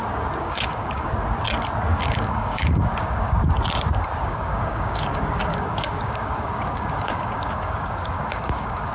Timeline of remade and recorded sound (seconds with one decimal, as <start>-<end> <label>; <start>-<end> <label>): 0.0-0.4 recorded; 0.4-1.1 remade; 1.1-1.9 recorded; 1.9-3.4 remade; 3.4-4.2 recorded; 4.2-8.9 remade